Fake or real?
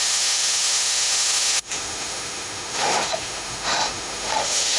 fake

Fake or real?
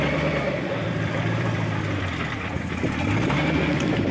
fake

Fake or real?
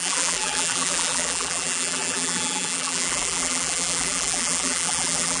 fake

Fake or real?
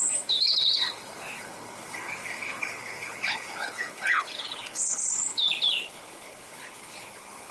fake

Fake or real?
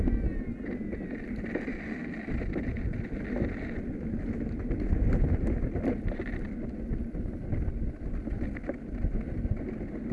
real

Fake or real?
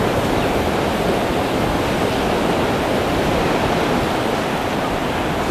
real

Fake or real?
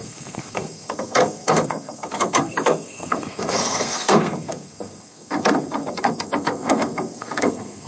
fake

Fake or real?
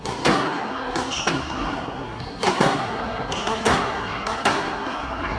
fake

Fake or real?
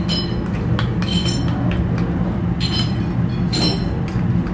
real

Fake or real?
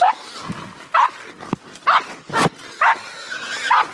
real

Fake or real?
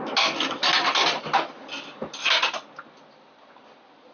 real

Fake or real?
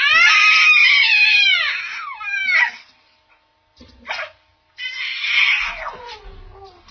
real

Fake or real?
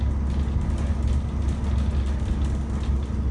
real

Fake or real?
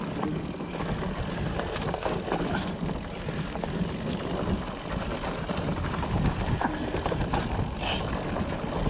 real